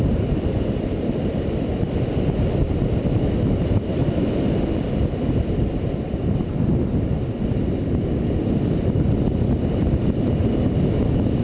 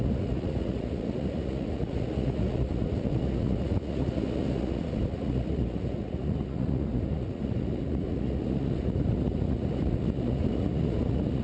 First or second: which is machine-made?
second